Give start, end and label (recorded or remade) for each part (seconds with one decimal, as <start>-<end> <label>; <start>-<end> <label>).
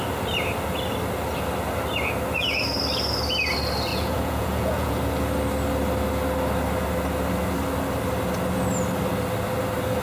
0.0-3.9 recorded; 3.9-5.0 remade; 5.0-10.0 recorded